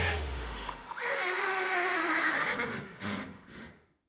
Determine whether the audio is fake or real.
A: fake